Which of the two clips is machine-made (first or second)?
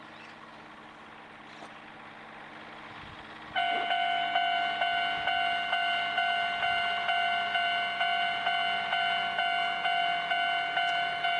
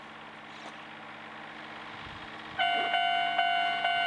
first